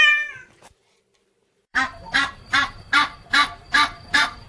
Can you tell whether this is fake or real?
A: fake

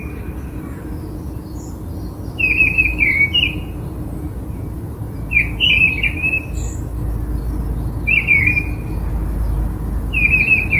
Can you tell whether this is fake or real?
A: real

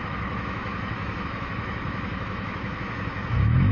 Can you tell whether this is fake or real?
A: fake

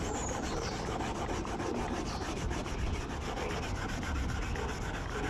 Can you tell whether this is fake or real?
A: real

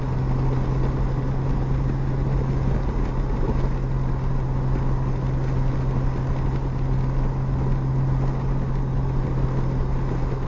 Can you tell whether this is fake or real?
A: real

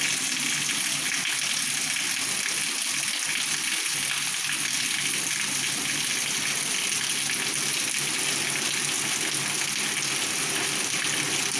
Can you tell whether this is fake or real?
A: real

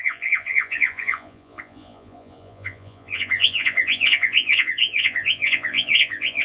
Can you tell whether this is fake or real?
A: fake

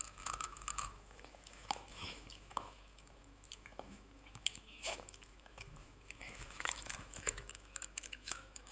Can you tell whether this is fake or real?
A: fake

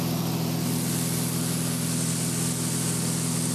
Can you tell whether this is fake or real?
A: real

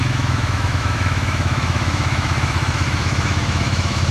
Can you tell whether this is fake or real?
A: fake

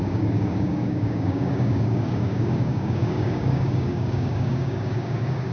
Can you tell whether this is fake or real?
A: fake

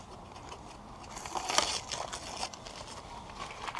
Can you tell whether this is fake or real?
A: real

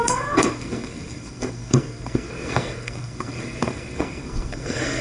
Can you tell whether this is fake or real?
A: fake